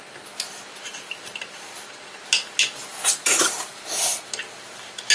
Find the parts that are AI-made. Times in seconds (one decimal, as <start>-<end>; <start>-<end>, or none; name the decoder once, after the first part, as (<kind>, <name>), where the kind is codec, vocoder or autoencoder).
none